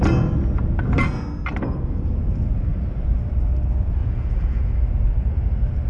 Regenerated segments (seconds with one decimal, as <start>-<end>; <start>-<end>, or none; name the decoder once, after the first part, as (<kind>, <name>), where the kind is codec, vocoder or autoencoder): 4.0-4.7 (vocoder, Vocos)